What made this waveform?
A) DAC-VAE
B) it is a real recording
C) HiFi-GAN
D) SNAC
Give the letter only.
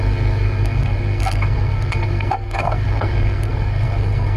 D